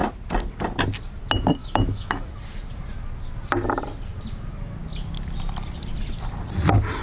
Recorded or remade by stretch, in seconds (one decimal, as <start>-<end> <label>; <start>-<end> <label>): 0.0-1.6 recorded; 1.6-2.3 remade; 2.3-7.0 recorded

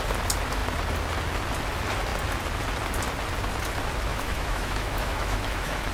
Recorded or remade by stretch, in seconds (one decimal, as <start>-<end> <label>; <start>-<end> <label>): 0.0-4.1 recorded; 4.1-5.9 remade

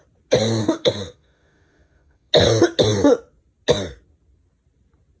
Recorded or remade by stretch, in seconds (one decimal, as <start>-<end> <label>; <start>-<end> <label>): 0.0-0.6 recorded; 0.6-2.3 remade; 2.3-5.2 recorded

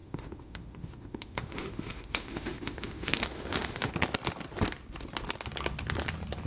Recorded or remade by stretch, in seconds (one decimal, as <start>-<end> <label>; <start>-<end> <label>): 0.0-3.9 remade; 3.9-6.5 recorded